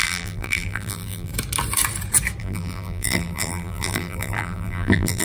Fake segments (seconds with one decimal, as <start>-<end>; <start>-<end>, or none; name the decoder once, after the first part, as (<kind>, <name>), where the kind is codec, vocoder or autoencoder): 0.0-1.3 (vocoder, BigVGAN v2); 2.4-5.2